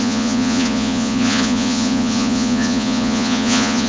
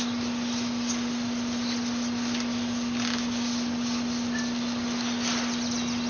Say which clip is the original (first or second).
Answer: second